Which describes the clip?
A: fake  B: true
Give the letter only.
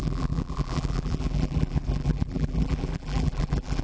A